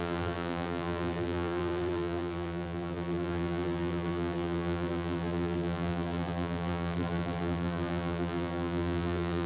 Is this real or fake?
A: fake